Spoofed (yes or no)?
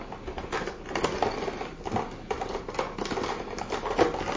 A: no